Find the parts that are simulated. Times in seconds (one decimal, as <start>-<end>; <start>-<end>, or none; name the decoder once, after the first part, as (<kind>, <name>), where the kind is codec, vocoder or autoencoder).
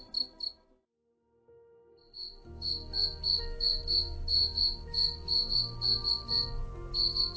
none